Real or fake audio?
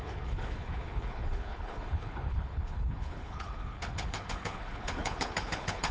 fake